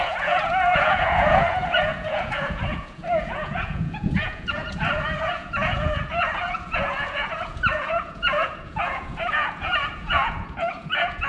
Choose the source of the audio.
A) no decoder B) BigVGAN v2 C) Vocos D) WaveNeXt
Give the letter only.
C